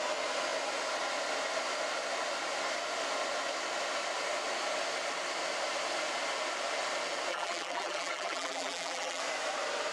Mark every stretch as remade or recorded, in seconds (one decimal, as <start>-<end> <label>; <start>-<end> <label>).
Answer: 0.0-7.3 recorded; 7.3-9.2 remade; 9.2-9.9 recorded